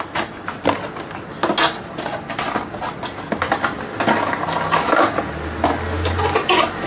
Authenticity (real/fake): real